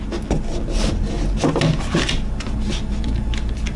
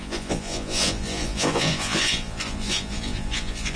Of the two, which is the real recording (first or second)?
first